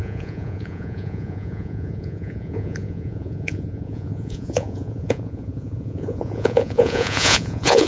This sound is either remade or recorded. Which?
remade